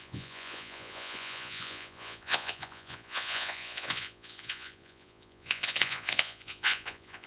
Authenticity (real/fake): fake